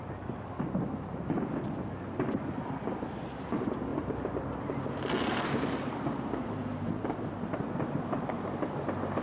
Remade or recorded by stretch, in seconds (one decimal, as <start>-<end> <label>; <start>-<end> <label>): 0.0-3.9 recorded; 3.9-4.4 remade; 4.4-9.2 recorded